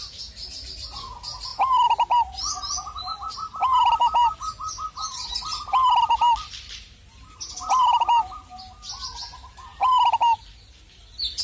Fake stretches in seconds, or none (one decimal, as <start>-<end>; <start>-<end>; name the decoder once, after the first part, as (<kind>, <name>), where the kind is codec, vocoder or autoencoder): none